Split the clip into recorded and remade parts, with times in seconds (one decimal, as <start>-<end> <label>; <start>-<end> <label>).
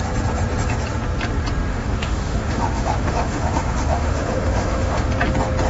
0.0-1.7 recorded; 1.7-5.1 remade; 5.1-5.7 recorded